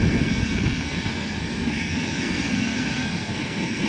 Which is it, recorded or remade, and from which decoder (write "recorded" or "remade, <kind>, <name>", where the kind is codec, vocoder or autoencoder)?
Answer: remade, codec, SNAC